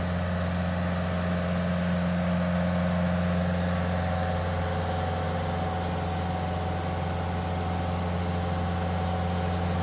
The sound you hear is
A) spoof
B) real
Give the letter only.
B